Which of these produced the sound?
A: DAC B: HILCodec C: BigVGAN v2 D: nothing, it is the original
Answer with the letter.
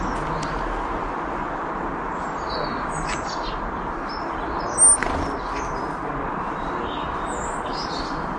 D